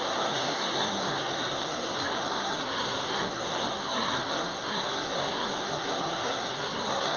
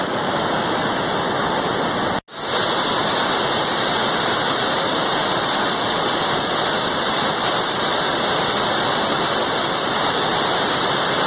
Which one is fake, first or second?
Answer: first